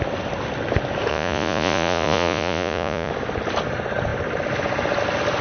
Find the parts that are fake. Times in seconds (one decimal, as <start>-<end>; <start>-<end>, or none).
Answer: 1.1-3.1